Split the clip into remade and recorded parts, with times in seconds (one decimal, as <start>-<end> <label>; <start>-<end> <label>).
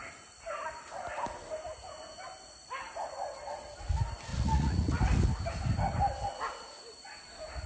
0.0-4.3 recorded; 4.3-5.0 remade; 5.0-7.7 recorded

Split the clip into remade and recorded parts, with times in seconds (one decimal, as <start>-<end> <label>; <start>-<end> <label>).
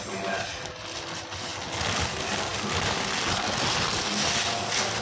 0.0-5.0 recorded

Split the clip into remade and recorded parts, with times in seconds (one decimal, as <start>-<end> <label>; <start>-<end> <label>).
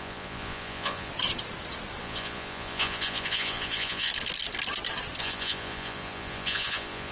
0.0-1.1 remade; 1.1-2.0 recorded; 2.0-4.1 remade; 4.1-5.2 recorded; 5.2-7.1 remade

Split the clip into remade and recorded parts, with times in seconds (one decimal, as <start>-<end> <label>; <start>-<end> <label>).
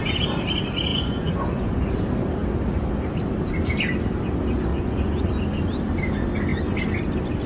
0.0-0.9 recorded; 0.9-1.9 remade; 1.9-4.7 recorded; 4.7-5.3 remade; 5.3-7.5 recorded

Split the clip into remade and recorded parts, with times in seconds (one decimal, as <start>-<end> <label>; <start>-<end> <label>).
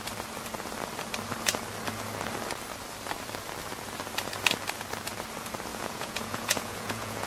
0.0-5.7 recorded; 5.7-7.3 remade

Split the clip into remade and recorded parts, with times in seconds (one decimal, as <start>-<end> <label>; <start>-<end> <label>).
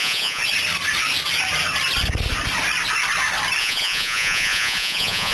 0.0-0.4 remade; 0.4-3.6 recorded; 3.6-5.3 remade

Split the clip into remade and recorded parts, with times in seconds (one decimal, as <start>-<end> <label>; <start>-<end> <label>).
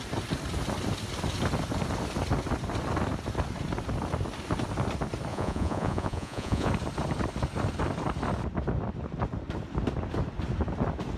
0.0-5.3 recorded; 5.3-6.7 remade; 6.7-11.2 recorded